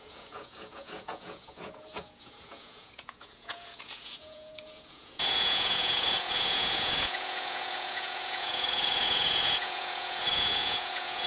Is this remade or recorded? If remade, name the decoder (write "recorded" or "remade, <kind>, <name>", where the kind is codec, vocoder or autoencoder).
remade, vocoder, Vocos